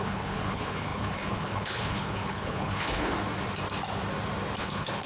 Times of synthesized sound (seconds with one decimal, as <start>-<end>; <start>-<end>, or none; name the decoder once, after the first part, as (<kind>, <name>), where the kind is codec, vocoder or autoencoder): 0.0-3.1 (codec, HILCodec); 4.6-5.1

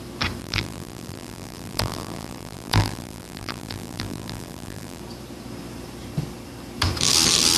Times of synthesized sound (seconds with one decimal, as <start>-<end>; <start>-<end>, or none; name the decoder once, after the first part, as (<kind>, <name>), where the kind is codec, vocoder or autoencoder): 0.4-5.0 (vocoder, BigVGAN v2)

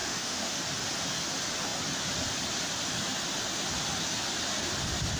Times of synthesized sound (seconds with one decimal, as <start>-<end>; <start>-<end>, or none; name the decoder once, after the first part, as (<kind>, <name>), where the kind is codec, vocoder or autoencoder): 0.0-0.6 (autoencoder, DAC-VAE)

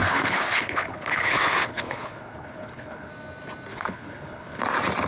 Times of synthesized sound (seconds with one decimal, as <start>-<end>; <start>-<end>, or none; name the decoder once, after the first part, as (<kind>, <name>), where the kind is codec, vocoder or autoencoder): 0.0-3.1 (codec, HILCodec); 3.7-4.6